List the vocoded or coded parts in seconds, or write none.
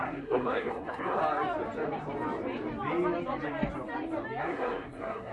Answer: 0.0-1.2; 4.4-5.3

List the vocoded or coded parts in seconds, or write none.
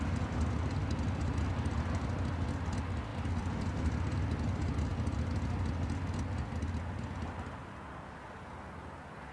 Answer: 3.1-3.9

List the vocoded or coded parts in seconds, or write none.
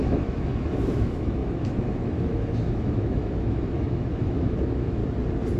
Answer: 0.0-5.0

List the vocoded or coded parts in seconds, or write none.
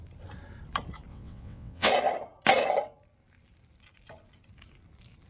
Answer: 1.1-1.9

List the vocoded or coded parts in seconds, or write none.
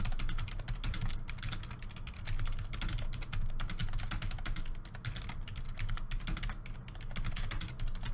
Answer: none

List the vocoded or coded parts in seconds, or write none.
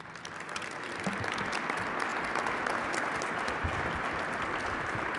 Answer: none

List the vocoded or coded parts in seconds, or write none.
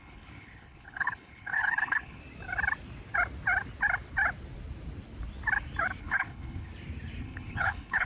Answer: 0.0-2.2; 6.0-6.7; 7.2-8.1